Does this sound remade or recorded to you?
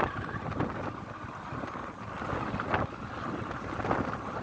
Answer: recorded